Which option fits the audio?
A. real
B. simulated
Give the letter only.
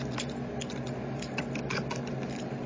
A